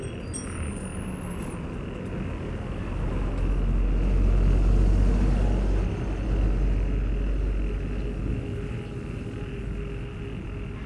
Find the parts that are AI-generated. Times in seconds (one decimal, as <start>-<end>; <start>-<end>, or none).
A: none